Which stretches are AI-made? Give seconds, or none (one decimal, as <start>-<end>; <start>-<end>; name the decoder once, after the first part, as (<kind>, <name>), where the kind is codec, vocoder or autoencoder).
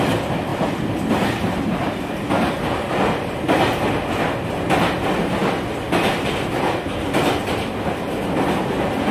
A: 0.5-3.3 (vocoder, BigVGAN v2); 5.4-6.1